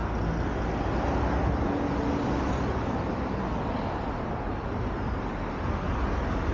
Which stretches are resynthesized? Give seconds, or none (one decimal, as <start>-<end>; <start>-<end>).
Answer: none